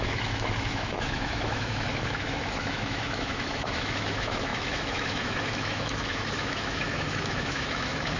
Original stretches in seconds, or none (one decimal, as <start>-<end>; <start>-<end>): none